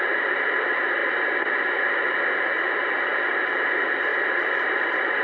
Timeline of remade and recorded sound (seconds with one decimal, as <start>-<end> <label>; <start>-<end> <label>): 0.0-4.1 recorded; 4.1-5.2 remade